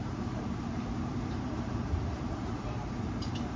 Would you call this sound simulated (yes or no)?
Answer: yes